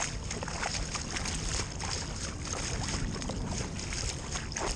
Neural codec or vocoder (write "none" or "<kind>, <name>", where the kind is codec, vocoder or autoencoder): none